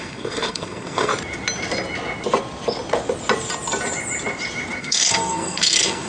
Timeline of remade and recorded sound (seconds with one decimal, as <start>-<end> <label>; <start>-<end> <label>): 0.0-1.1 remade; 1.1-4.8 recorded; 4.8-6.1 remade